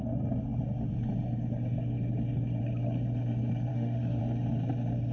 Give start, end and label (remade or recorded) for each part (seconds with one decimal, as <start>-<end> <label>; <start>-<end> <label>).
0.0-3.7 recorded; 3.7-4.2 remade; 4.2-5.1 recorded